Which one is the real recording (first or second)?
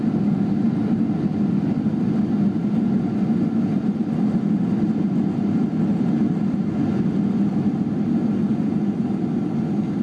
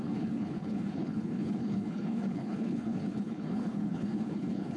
first